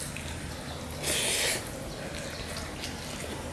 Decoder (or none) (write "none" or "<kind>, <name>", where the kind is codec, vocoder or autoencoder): none